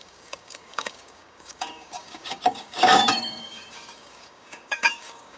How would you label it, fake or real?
fake